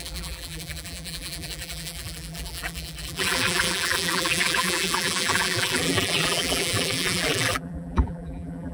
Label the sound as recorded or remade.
remade